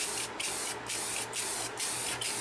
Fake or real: real